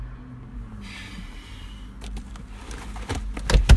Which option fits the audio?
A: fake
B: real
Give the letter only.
B